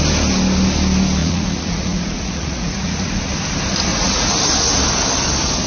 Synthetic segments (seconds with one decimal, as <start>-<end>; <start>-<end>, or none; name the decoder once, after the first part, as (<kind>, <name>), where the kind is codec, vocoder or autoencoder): 1.2-3.1 (vocoder, Vocos); 3.9-4.4